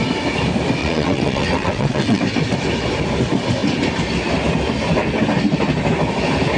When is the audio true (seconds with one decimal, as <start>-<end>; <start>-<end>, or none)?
0.0-0.8; 2.2-6.6

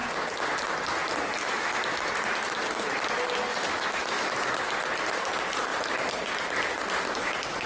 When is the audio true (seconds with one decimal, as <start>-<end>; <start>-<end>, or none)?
0.0-1.4; 2.1-3.5; 4.3-7.7

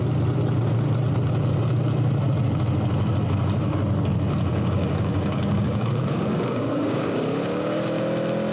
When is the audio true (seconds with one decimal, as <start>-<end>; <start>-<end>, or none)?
0.0-4.5; 8.0-8.5

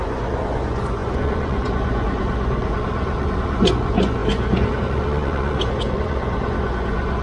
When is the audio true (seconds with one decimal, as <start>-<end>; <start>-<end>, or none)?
none